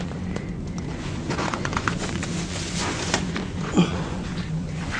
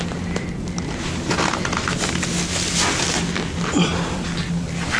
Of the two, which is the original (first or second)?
second